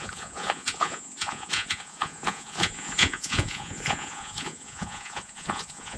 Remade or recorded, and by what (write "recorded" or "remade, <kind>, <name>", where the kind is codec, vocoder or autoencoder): remade, vocoder, Vocos